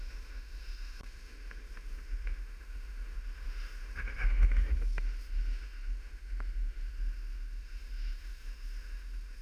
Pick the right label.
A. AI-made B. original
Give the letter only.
A